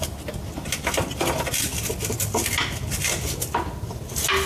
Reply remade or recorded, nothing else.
recorded